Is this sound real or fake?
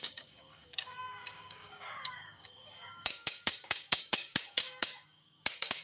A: fake